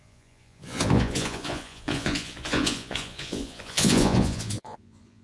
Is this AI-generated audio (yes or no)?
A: yes